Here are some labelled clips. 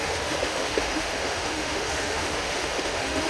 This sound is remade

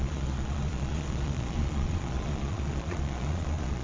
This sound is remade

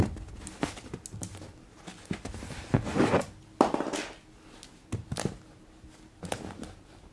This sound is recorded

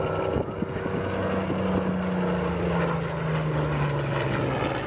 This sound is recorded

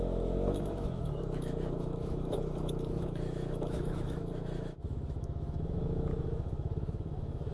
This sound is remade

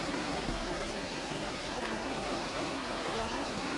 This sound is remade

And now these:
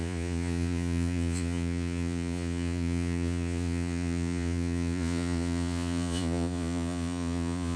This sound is remade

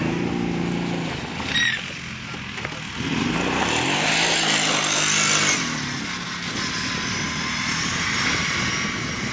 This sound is recorded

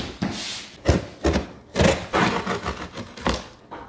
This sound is recorded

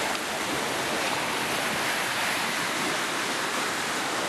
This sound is remade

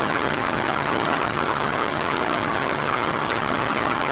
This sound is remade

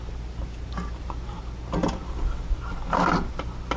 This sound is recorded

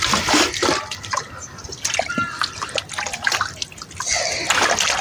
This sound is recorded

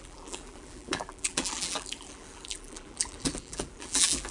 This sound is remade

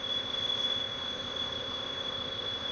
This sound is remade